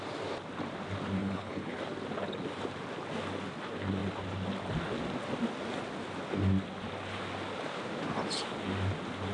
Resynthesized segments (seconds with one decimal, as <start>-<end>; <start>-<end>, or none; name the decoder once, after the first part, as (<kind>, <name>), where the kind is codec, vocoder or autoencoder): 1.2-1.8 (codec, HILCodec)